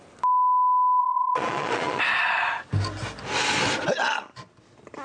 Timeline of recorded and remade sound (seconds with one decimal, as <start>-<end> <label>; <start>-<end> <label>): 0.0-1.0 recorded; 1.0-2.0 remade; 2.0-5.0 recorded